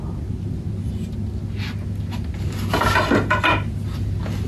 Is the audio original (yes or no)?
yes